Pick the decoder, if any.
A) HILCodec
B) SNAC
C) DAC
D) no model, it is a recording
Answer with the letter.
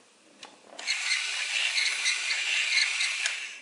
D